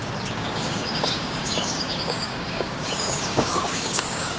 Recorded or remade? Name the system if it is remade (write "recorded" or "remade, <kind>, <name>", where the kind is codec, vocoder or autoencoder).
remade, codec, DAC